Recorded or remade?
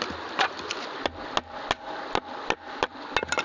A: recorded